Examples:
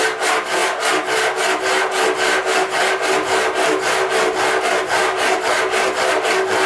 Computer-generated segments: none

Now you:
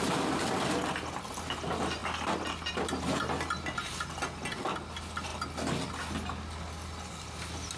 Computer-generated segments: none

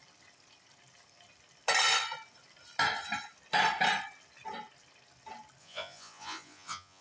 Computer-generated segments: 5.6-7.0 (vocoder, Vocos)

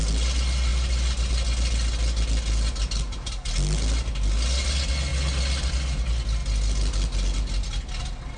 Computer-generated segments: none

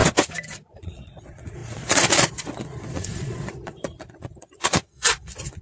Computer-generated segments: 0.7-5.6 (vocoder, Vocos)